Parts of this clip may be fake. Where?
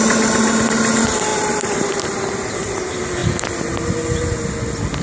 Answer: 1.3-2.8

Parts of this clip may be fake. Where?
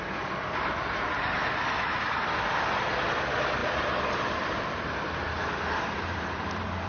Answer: 3.6-6.9